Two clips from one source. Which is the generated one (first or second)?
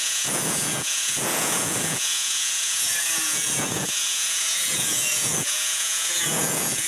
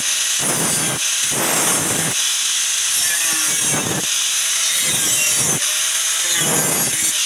first